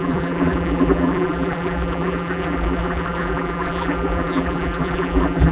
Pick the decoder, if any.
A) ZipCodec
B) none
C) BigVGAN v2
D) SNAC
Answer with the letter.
C